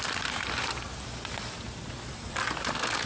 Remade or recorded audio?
recorded